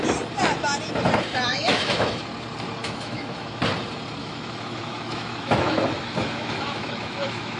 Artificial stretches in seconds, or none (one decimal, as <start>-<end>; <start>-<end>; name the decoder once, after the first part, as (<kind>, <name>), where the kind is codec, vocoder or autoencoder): 1.5-2.2 (autoencoder, DAC-VAE); 2.8-3.6; 4.2-7.6